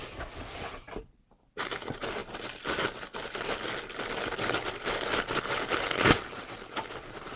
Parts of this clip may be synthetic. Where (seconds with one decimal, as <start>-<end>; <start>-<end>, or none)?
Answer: none